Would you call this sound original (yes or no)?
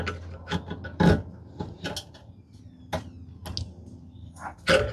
yes